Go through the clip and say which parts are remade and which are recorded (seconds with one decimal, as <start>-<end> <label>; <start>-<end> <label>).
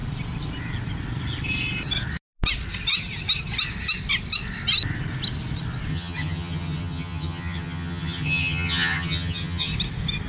0.0-5.9 recorded; 5.9-9.7 remade; 9.7-10.3 recorded